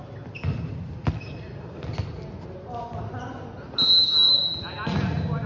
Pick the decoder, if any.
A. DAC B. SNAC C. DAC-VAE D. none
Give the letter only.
D